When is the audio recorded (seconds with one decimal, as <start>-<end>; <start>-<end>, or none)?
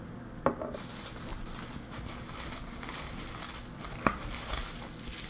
0.0-5.3